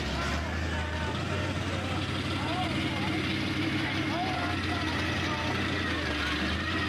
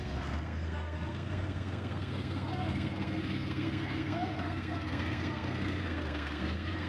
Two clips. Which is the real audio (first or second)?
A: first